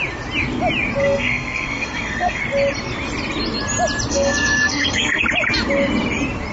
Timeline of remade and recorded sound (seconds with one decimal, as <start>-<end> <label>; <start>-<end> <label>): 0.0-1.0 recorded; 1.0-2.4 remade; 2.4-4.1 recorded; 4.1-5.2 remade; 5.2-6.5 recorded